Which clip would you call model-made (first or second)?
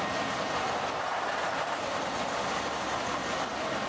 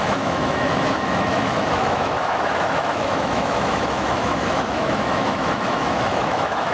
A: second